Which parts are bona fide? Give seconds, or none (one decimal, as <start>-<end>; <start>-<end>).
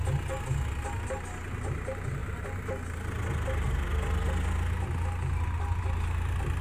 0.0-6.6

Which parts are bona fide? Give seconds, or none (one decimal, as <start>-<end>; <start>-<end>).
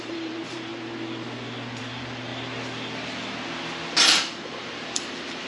0.7-1.8; 2.3-4.0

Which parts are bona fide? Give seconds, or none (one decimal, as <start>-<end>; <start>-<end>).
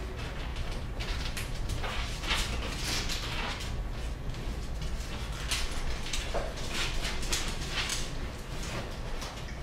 0.0-0.5; 1.8-9.6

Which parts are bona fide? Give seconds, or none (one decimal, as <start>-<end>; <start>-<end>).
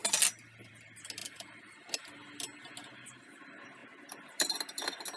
0.0-1.2; 1.9-3.8; 4.8-5.2